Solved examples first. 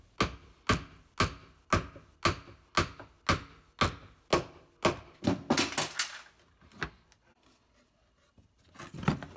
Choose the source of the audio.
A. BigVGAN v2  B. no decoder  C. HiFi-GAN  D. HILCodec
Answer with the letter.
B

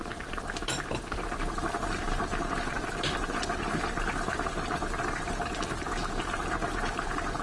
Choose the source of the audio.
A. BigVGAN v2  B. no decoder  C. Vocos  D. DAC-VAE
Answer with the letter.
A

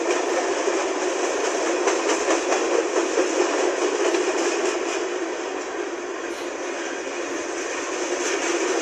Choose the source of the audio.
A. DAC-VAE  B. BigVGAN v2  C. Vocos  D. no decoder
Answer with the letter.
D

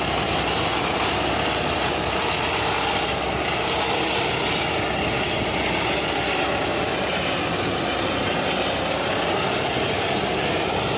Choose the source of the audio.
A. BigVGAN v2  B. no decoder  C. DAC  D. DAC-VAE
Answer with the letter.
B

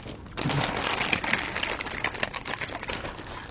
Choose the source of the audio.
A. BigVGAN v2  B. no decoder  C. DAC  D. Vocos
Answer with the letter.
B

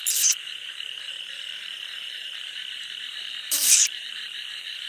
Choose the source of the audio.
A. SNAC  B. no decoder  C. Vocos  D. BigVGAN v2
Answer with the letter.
D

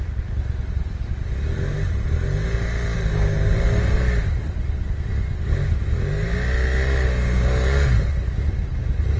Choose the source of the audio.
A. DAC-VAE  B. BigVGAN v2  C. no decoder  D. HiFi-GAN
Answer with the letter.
C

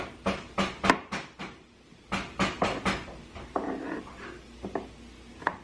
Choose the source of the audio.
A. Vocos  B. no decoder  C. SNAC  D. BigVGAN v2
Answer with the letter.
B